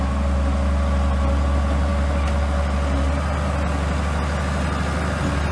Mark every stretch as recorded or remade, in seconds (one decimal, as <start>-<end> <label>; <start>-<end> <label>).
0.0-5.5 recorded